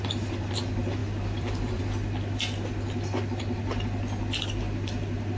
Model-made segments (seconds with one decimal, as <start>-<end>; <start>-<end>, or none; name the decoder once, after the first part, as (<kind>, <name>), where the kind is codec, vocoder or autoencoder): 1.0-1.8 (vocoder, BigVGAN v2)